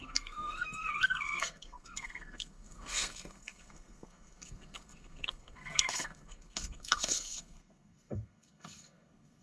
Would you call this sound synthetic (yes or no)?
yes